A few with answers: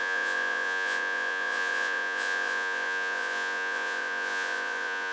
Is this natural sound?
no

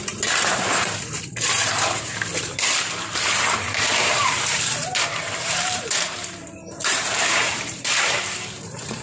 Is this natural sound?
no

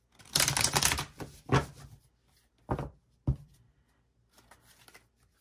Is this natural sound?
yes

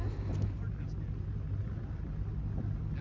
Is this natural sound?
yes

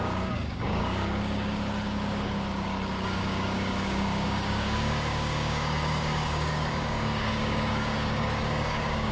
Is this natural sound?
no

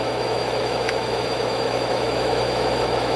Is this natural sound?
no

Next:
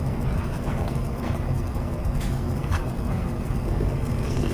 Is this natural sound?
no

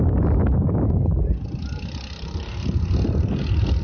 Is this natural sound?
yes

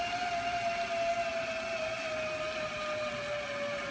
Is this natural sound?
yes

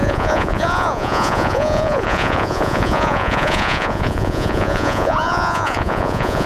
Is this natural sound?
no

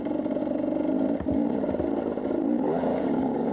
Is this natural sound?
yes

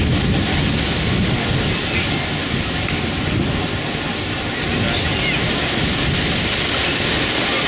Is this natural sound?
yes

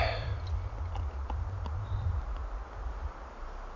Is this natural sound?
yes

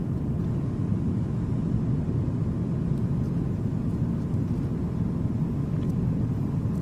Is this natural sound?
yes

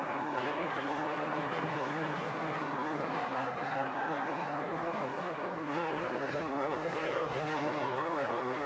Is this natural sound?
no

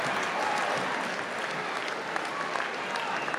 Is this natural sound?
yes